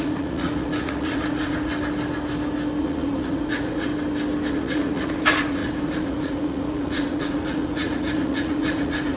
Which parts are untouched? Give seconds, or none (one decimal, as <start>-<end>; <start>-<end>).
1.7-2.8; 3.9-4.5